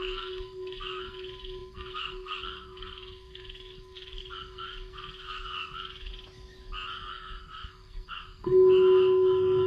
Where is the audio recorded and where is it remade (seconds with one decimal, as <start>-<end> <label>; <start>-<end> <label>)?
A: 0.0-6.1 remade; 6.1-7.1 recorded; 7.1-9.7 remade